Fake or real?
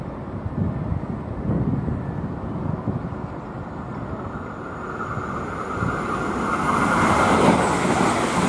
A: real